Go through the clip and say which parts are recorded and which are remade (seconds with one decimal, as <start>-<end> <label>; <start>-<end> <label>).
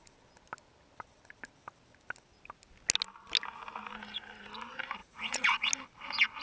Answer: 0.0-5.0 recorded; 5.0-5.7 remade; 5.7-6.4 recorded